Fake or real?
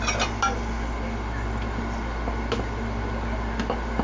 real